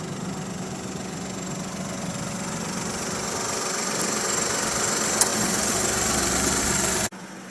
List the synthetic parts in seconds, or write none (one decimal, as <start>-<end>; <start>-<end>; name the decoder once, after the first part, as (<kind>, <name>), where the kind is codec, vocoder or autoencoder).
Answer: none